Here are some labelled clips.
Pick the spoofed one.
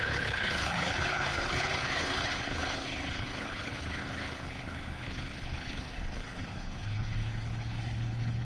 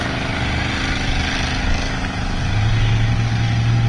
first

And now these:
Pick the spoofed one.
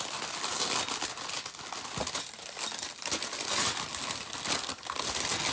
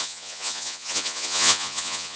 second